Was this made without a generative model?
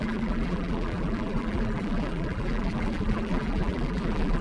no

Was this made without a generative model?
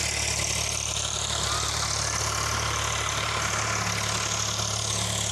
yes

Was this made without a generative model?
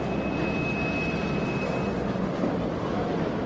yes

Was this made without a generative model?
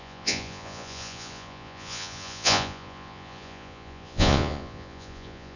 no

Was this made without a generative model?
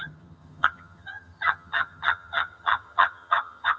no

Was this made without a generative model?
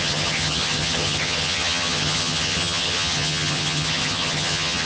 no